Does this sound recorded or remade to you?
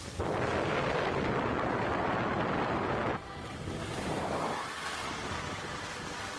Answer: recorded